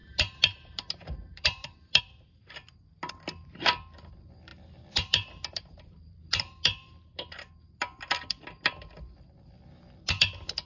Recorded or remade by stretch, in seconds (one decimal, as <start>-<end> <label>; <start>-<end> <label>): 0.0-2.0 remade; 2.0-4.5 recorded; 4.5-6.2 remade; 6.2-10.7 recorded